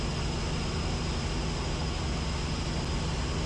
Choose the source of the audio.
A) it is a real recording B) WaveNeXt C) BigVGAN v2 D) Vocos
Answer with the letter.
A